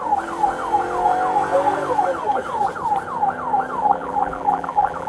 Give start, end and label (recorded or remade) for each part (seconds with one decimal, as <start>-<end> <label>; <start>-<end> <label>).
0.0-3.8 recorded; 3.8-5.1 remade